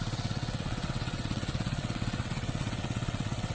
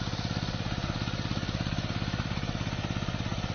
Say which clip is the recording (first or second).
second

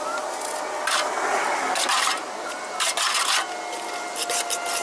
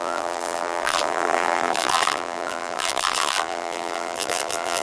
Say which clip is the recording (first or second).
first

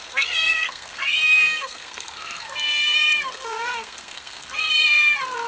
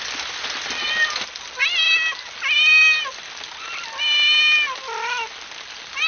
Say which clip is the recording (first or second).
second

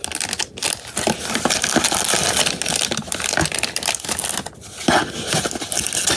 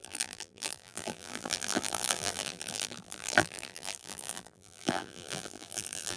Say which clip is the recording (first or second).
first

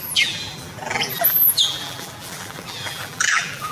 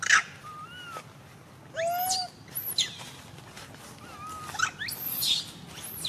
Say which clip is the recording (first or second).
second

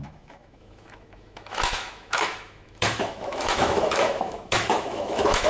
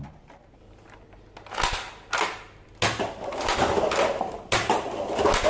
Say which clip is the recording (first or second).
second